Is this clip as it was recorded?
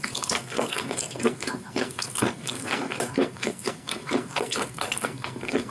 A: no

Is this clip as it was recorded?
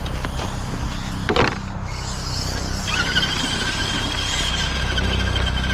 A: yes